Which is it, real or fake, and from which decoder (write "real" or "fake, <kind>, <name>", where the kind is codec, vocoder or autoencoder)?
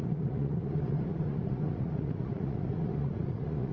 fake, vocoder, Vocos